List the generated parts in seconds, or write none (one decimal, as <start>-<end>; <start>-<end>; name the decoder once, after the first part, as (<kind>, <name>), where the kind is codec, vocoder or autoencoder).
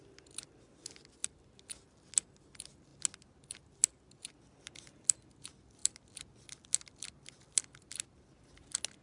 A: none